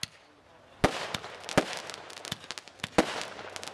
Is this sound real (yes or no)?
yes